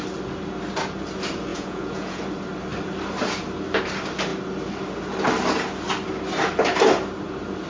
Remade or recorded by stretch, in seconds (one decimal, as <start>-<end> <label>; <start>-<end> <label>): 0.0-1.5 recorded; 1.5-2.2 remade; 2.2-7.7 recorded